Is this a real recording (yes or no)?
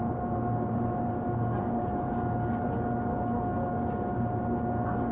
yes